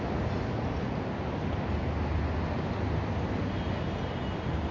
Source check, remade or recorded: recorded